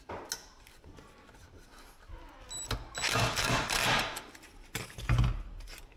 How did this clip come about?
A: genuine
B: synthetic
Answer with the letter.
A